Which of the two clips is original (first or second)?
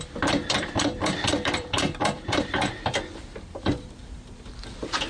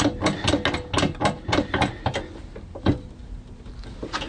second